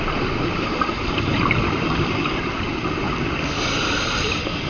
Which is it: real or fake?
real